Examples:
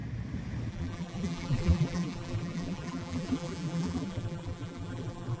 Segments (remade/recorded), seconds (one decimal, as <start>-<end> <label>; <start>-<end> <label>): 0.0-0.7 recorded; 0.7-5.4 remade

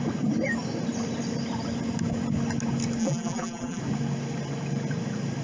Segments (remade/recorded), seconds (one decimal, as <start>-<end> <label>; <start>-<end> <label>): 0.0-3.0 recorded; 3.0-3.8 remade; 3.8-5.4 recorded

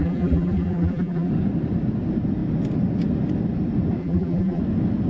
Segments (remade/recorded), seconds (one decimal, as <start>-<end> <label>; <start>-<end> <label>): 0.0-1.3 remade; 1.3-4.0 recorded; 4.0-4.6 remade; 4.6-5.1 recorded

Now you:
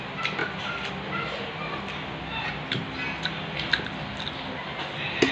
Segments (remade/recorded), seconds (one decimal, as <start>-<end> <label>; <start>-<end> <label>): 0.0-0.4 recorded; 0.4-0.9 remade; 0.9-5.3 recorded